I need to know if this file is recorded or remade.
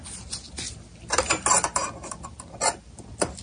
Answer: recorded